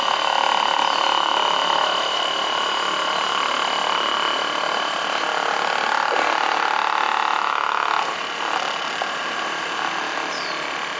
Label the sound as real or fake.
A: real